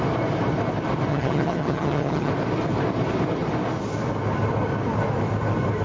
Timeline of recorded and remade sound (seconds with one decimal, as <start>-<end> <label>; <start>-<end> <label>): 0.0-1.1 recorded; 1.1-2.3 remade; 2.3-5.8 recorded